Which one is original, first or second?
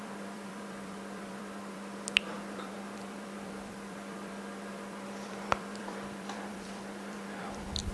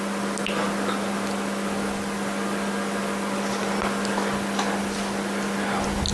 second